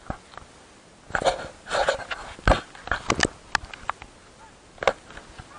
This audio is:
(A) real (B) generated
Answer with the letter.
A